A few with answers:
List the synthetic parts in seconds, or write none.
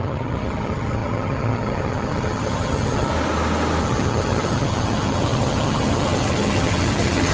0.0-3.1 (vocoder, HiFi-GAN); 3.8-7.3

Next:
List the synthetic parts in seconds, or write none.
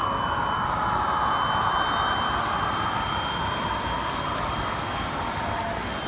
none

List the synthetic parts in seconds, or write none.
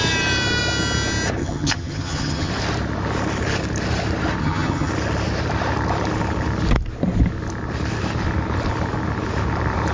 1.4-2.5 (vocoder, HiFi-GAN); 4.4-4.9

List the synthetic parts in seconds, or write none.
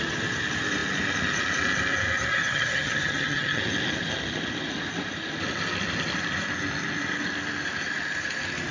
2.3-3.6 (vocoder, HiFi-GAN)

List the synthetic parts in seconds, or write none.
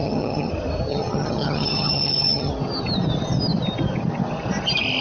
0.0-0.5 (vocoder, HiFi-GAN); 0.9-2.5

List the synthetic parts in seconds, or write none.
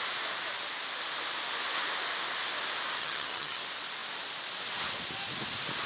3.0-3.6 (vocoder, HiFi-GAN)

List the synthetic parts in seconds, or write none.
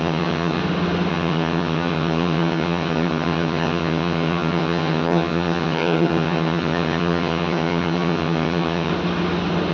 0.0-0.6 (vocoder, HiFi-GAN); 1.1-8.9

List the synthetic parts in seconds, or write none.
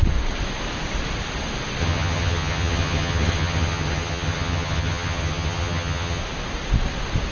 1.8-6.2 (vocoder, HiFi-GAN)